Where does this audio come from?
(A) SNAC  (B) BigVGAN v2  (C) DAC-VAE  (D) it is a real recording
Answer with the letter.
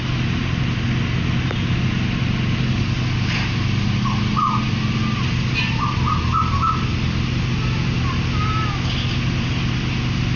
D